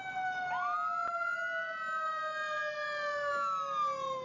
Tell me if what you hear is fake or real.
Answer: real